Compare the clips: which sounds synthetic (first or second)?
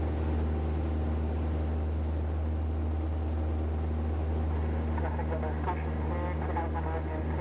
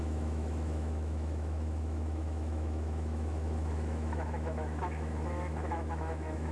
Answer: second